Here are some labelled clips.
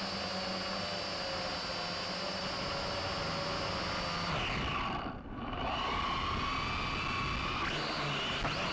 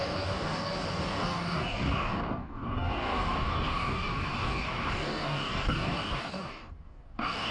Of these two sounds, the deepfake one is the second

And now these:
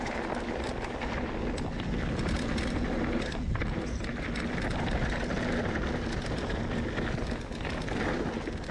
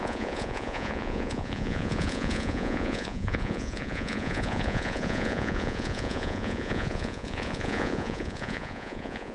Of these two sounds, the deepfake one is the second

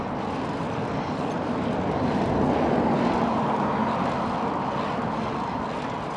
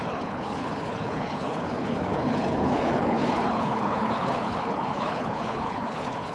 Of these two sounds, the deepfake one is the second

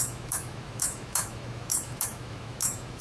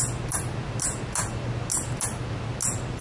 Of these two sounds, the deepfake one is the first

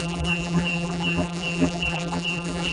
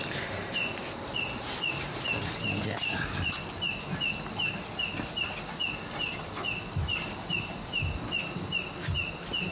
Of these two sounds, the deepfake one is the first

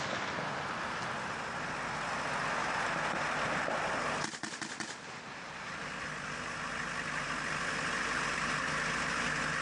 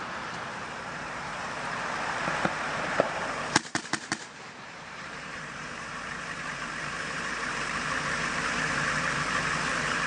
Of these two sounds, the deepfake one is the second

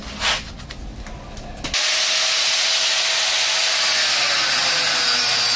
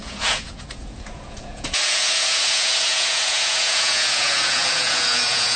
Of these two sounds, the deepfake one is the second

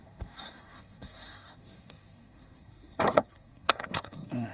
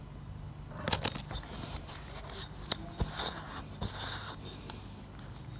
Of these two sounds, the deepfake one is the first